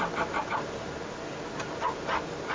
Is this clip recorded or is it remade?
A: recorded